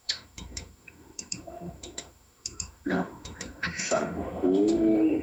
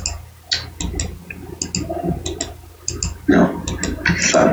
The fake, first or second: first